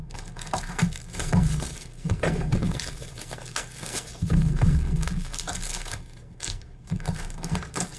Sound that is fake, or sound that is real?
fake